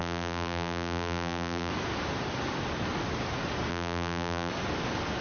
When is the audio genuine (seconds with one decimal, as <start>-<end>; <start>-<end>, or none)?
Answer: 1.7-3.7; 4.5-5.2